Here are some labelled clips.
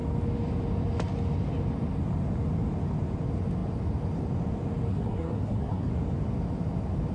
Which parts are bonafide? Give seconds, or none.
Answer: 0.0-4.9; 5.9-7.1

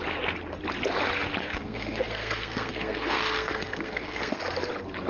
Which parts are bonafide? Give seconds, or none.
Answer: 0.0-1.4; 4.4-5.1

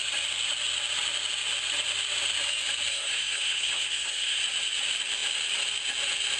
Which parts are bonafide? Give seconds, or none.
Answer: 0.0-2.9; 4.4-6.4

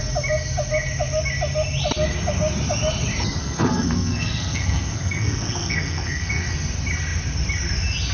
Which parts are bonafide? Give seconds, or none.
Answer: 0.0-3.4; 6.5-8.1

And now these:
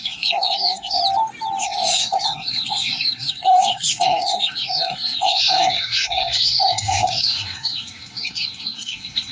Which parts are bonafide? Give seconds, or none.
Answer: 1.0-1.6